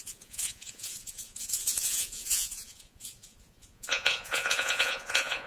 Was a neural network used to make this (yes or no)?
yes